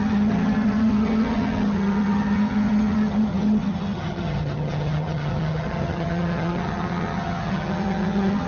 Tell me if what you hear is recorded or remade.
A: remade